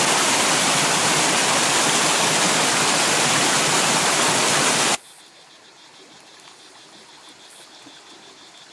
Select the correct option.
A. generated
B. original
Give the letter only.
B